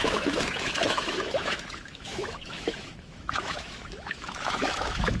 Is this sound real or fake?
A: fake